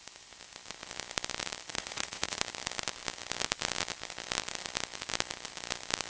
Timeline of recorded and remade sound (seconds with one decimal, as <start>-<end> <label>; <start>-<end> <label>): 0.0-1.7 recorded; 1.7-2.4 remade; 2.4-6.1 recorded